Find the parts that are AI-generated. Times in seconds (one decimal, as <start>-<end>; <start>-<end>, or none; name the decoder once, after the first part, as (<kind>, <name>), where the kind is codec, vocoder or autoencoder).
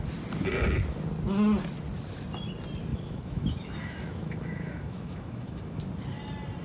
2.9-5.8 (autoencoder, DAC-VAE)